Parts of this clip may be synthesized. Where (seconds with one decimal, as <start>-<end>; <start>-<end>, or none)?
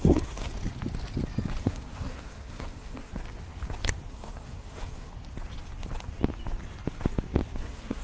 0.0-0.5; 1.6-3.1; 4.1-5.1; 7.6-8.0